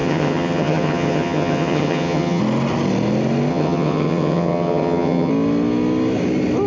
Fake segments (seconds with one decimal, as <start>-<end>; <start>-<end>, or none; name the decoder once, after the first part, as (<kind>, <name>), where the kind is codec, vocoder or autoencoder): 0.0-2.4 (vocoder, HiFi-GAN); 3.5-5.3